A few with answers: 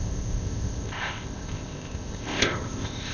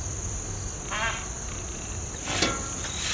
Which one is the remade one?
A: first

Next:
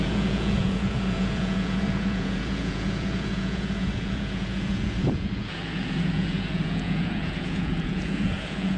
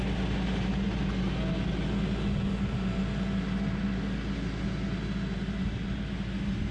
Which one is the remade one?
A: first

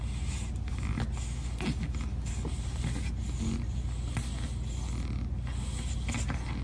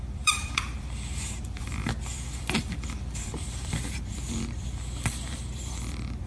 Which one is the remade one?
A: second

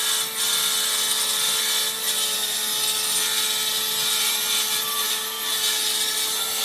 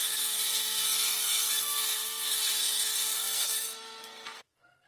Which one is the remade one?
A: second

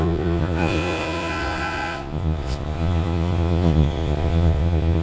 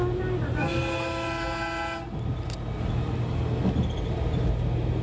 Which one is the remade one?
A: first